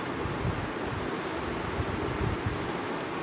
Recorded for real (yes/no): yes